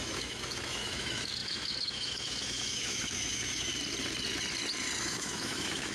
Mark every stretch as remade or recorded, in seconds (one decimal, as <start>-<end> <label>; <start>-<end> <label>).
0.0-3.7 remade; 3.7-5.0 recorded; 5.0-5.9 remade